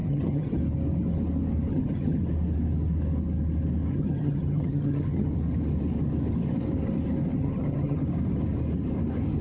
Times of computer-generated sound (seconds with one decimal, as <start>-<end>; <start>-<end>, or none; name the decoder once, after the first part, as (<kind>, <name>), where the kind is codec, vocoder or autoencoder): 0.0-0.6 (vocoder, HiFi-GAN); 1.7-2.2; 3.9-5.3; 7.3-8.0